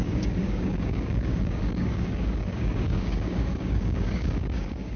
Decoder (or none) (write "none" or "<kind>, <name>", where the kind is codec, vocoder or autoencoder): codec, DAC